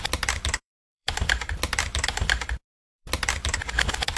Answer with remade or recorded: remade